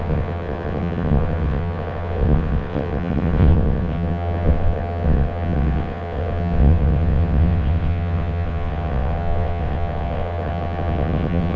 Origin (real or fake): fake